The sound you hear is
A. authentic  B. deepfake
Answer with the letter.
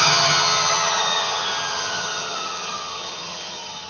B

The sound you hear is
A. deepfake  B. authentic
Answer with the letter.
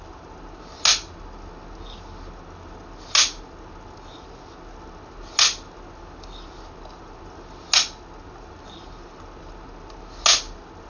B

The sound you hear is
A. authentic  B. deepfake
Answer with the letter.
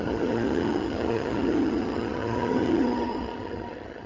B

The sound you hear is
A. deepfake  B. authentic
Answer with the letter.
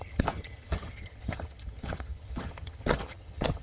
A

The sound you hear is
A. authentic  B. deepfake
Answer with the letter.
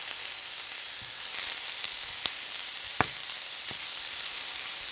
A